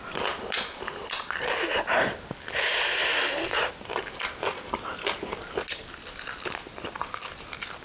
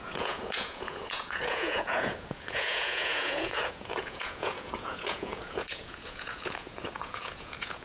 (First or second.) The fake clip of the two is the second